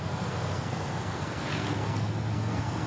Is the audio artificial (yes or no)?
yes